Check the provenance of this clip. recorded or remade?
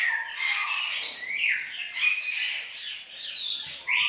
recorded